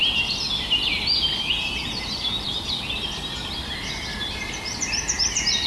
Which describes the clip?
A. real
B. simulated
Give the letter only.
A